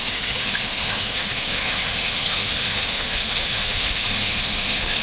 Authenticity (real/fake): fake